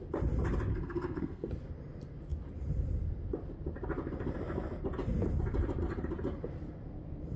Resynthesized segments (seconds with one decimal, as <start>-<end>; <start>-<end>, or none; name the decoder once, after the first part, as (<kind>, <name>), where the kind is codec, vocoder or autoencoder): 0.7-1.5 (codec, SNAC)